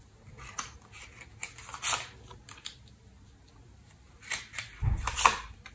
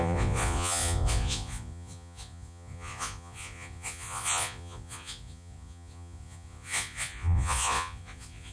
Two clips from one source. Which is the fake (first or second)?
second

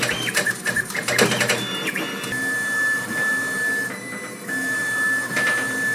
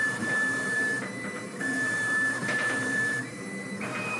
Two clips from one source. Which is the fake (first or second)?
second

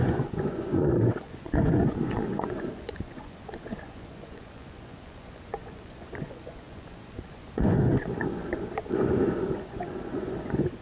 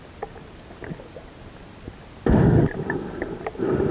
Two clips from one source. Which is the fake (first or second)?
first